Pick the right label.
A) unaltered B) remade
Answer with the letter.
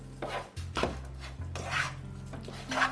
A